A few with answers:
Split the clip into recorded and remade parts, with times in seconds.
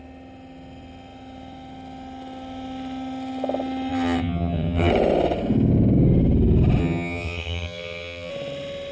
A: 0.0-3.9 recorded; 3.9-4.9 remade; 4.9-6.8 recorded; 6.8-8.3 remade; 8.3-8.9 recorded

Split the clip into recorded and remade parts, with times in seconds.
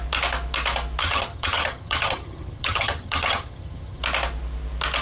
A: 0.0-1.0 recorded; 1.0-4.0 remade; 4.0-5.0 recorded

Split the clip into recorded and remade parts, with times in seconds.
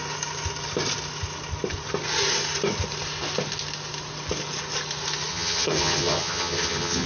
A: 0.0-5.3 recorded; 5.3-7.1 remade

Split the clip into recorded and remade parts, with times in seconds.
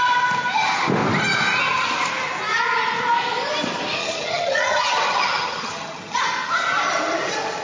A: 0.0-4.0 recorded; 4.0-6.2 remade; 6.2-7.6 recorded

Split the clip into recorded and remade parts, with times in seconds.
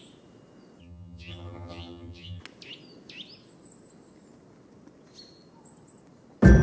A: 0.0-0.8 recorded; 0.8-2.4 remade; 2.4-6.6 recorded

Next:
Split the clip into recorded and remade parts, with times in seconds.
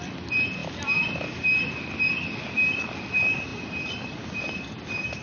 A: 0.0-5.2 recorded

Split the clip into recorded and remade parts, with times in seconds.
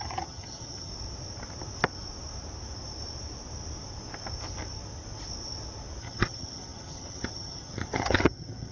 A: 0.0-0.9 remade; 0.9-6.0 recorded; 6.0-8.7 remade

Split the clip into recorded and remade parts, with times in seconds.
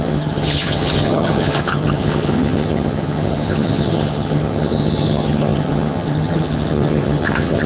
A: 0.0-7.7 remade